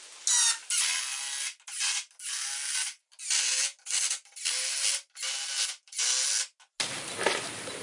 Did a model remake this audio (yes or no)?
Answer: no